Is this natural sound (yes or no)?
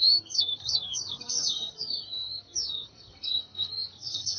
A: no